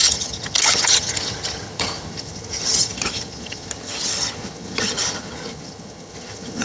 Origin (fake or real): fake